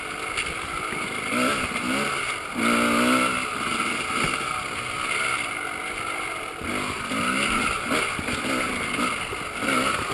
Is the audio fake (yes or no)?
no